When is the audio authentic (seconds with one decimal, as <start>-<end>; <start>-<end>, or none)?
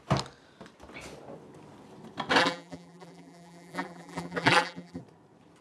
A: 0.0-2.4; 5.0-5.6